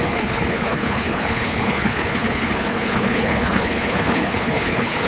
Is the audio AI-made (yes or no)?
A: yes